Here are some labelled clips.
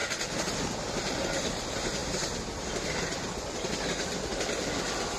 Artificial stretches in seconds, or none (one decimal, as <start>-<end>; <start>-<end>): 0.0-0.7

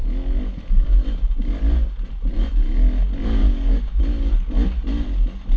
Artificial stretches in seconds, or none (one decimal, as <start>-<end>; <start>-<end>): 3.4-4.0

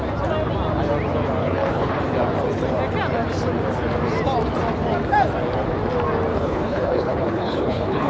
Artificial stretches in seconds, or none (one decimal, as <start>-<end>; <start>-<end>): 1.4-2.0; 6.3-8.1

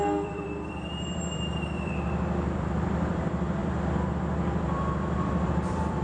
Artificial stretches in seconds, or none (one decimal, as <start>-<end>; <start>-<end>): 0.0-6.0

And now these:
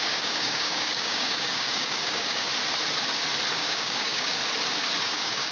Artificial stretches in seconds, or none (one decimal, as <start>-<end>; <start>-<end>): 0.0-2.5; 3.5-4.4; 5.0-5.5

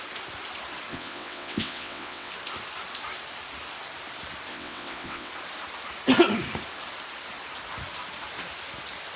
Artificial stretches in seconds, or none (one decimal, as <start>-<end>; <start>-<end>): 0.9-2.3; 4.5-5.3